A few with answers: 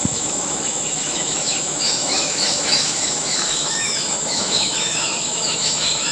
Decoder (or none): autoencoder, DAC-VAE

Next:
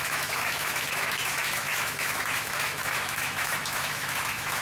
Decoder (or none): autoencoder, DAC-VAE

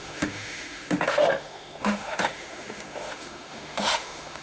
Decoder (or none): autoencoder, DAC-VAE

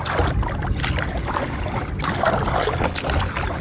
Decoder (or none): none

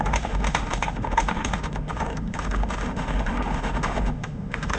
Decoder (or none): autoencoder, DAC-VAE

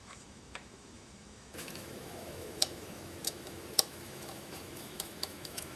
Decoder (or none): autoencoder, DAC-VAE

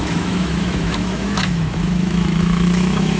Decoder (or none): autoencoder, DAC-VAE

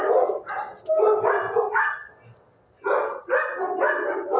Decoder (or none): none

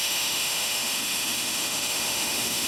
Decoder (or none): autoencoder, DAC-VAE